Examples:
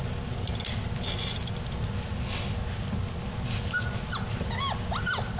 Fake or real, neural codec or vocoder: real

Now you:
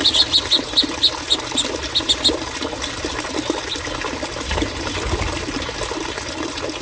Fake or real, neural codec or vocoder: real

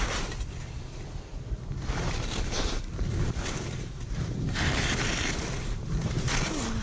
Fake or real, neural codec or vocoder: real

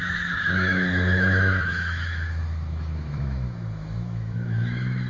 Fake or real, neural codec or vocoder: fake, autoencoder, DAC-VAE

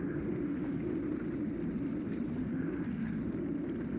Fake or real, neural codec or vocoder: real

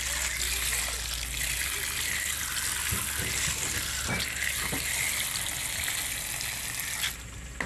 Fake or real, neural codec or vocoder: real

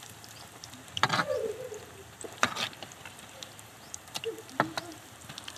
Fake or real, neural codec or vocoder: fake, vocoder, BigVGAN v2